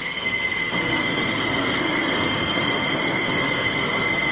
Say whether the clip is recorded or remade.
remade